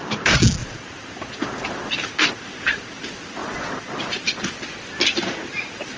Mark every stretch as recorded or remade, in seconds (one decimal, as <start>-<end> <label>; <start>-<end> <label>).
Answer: 0.0-6.0 recorded